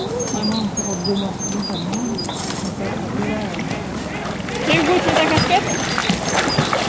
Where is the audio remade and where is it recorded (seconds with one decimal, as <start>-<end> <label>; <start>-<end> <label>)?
0.0-6.9 recorded